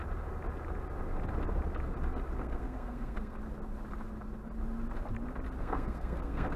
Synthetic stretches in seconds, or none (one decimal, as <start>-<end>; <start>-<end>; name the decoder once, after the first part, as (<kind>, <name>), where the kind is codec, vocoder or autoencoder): 2.4-3.4 (codec, SNAC); 5.6-6.6